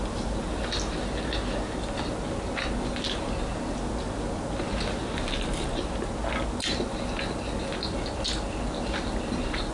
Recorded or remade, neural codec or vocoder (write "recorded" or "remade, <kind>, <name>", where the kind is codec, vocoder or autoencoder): recorded